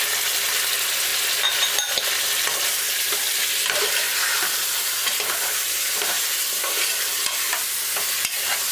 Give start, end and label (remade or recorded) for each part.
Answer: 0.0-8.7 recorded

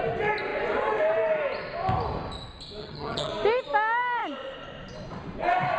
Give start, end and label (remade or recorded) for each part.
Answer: 0.0-2.8 recorded; 2.8-3.3 remade; 3.3-5.8 recorded